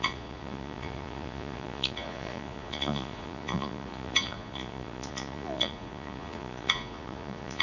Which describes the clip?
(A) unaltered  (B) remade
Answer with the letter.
B